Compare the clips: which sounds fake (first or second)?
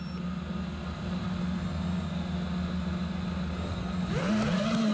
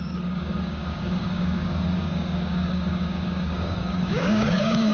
second